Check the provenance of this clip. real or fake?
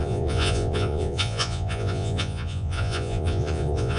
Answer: fake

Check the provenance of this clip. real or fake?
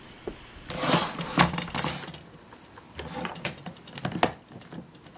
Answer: real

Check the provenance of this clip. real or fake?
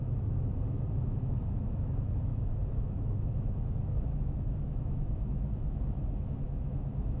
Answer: fake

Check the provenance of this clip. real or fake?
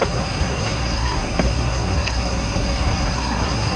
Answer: fake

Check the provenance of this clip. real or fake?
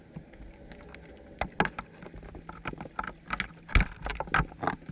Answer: real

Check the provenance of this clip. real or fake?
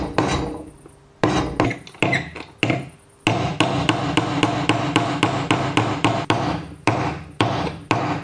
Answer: real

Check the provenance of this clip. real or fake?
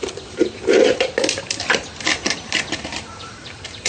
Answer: fake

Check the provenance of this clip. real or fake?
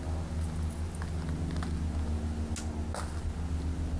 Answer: real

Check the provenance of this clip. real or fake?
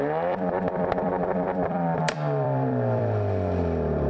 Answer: fake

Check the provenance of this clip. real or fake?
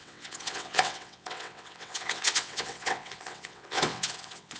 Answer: fake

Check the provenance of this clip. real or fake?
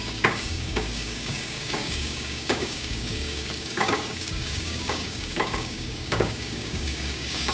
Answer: fake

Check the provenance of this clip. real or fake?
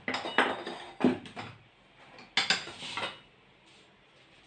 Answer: real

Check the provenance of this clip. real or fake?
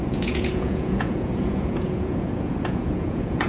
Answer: fake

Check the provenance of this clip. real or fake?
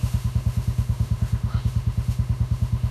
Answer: fake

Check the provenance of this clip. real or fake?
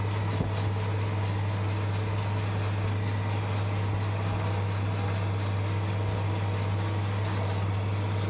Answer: real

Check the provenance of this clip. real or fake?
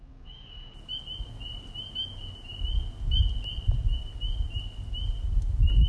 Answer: real